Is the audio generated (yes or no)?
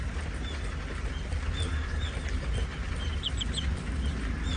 no